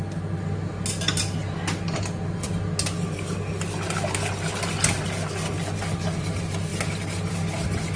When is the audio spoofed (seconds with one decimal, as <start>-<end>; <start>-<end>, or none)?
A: none